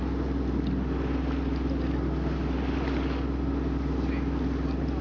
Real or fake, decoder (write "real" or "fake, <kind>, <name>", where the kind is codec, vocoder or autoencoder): real